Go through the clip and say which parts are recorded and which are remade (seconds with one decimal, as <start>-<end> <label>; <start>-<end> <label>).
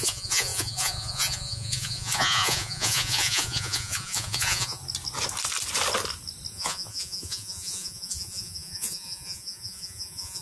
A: 0.0-4.8 remade; 4.8-6.5 recorded; 6.5-10.4 remade